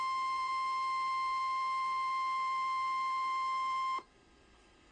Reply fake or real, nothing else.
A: fake